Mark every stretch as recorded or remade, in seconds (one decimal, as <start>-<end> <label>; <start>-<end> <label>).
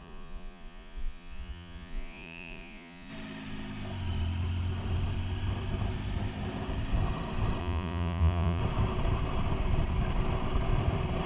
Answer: 0.0-3.1 remade; 3.1-7.6 recorded; 7.6-8.6 remade; 8.6-11.3 recorded